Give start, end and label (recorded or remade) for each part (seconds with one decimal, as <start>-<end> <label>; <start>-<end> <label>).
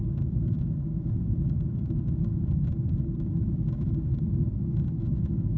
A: 0.0-4.5 remade; 4.5-5.1 recorded; 5.1-5.6 remade